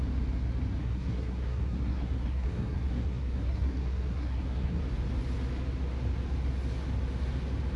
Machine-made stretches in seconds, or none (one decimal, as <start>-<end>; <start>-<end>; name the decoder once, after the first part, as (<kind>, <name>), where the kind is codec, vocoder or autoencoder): 0.8-4.8 (codec, SNAC)